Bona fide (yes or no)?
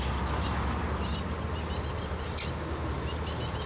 yes